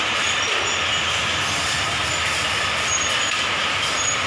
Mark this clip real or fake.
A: real